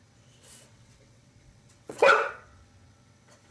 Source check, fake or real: fake